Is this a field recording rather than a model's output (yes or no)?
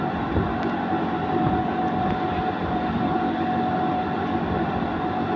no